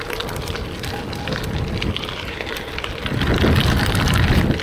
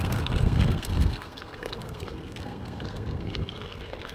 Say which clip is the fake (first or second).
second